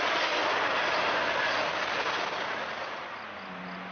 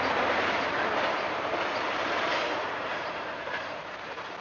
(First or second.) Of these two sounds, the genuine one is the first